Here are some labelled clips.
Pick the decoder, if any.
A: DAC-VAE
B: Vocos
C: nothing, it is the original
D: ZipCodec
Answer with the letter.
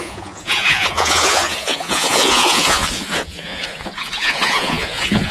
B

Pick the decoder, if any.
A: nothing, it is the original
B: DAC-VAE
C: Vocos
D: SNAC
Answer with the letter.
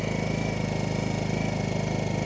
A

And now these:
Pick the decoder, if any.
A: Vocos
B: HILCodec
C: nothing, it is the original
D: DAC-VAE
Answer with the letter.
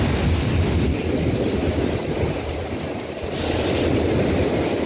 C